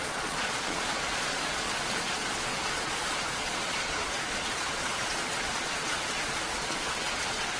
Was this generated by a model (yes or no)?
yes